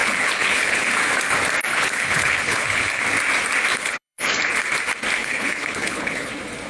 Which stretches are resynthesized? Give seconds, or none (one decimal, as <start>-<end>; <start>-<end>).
0.0-0.8; 1.7-3.0; 3.7-4.4; 5.2-6.3